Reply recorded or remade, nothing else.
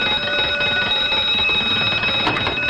recorded